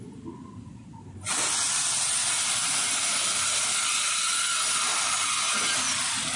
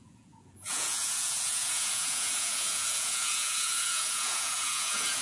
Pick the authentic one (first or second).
first